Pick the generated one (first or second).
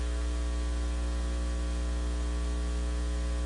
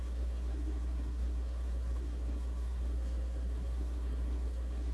second